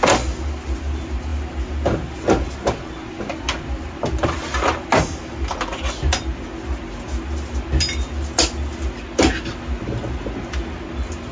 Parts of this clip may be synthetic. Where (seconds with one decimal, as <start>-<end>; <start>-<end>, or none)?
none